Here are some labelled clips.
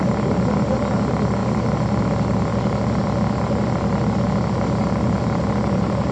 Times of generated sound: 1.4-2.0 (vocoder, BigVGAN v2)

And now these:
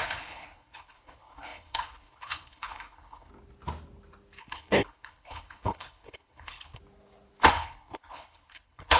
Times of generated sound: 0.0-3.3 (codec, HILCodec); 4.4-6.8; 7.5-9.0

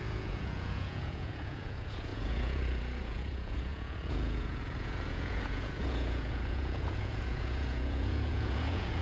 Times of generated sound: 0.0-9.0 (vocoder, Vocos)

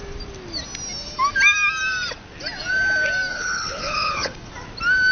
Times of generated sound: 3.3-4.5 (codec, HILCodec)

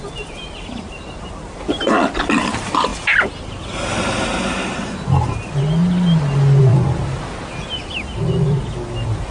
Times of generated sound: 0.0-2.9 (vocoder, BigVGAN v2); 6.6-9.3